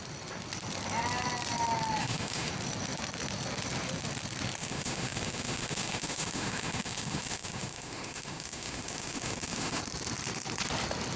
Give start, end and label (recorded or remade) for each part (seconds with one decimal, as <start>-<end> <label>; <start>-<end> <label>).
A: 0.0-2.0 recorded; 2.0-2.5 remade; 2.5-4.6 recorded; 4.6-9.8 remade; 9.8-11.2 recorded